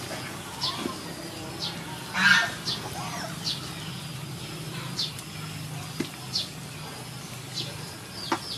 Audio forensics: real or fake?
real